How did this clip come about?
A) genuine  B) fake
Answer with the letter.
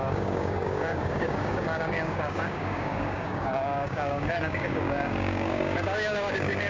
B